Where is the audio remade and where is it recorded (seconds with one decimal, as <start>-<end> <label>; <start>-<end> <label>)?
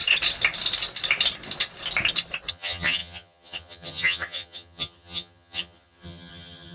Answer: 0.0-2.5 recorded; 2.5-6.7 remade